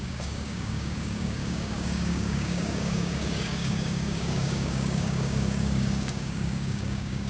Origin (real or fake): fake